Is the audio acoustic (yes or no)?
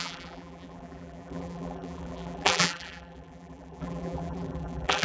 no